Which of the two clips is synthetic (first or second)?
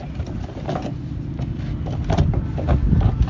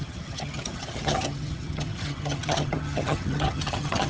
second